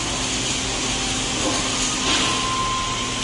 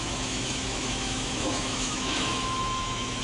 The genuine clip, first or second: first